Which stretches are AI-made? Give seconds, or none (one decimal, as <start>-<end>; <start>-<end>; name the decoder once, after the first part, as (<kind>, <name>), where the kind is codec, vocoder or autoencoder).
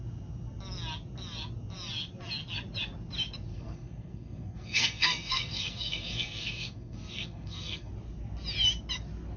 3.5-7.9 (codec, SNAC)